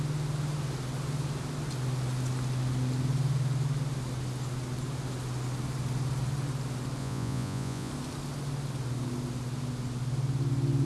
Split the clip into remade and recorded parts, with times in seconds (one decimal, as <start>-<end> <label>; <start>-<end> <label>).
0.0-7.0 recorded; 7.0-7.9 remade; 7.9-10.8 recorded